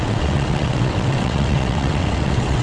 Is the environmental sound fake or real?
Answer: fake